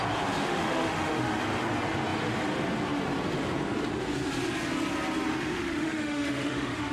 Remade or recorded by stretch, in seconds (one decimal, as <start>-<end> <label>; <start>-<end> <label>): 0.0-0.4 recorded; 0.4-1.4 remade; 1.4-5.3 recorded; 5.3-6.9 remade

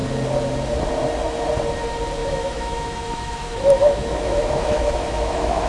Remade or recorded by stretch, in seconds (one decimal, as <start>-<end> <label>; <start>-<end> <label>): 0.0-2.2 recorded; 2.2-5.7 remade

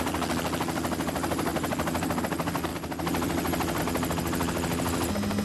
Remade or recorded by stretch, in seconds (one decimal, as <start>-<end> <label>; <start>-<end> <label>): 0.0-5.4 recorded